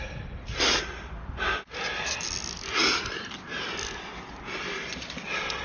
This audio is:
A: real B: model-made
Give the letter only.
A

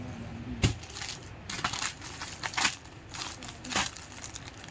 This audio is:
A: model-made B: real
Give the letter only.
B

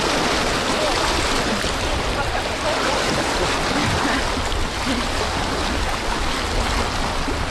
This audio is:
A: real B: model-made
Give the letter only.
A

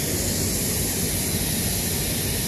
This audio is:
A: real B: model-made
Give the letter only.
A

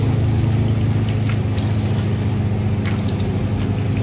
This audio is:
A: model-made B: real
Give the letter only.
B